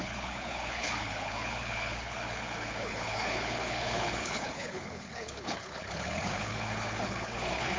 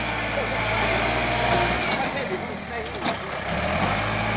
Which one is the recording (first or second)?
second